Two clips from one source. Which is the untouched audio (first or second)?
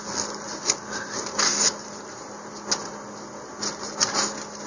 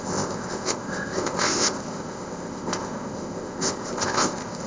first